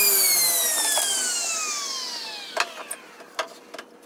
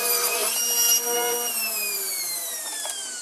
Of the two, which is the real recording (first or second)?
first